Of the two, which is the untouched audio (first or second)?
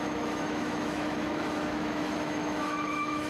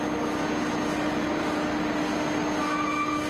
second